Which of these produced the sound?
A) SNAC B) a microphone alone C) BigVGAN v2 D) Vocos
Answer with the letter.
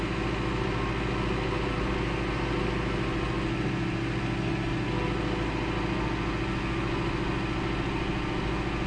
B